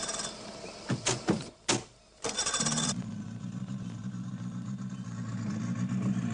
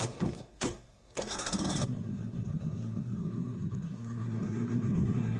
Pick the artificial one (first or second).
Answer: second